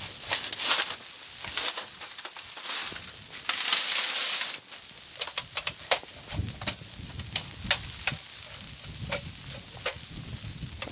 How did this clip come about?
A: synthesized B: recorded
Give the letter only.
B